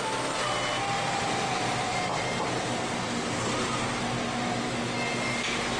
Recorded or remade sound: recorded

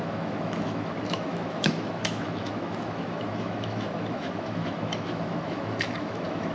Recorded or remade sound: remade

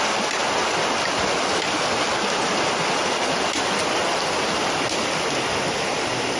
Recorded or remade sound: recorded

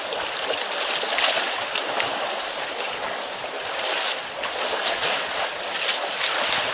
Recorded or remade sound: recorded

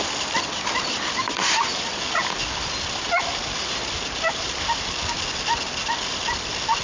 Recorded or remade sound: recorded